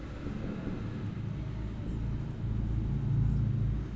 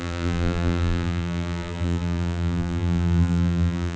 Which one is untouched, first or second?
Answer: first